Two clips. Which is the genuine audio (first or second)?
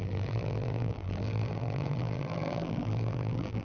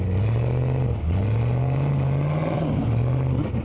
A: second